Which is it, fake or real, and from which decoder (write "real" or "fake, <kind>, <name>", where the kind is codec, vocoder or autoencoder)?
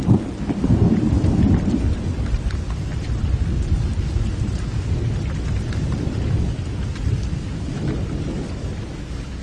real